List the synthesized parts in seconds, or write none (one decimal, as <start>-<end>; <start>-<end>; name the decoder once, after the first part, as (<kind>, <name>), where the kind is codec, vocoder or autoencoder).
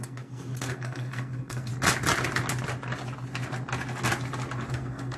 0.0-1.7 (codec, SNAC); 4.7-5.2